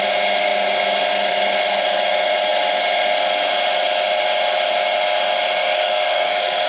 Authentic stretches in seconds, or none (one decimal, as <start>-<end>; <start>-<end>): 0.0-5.6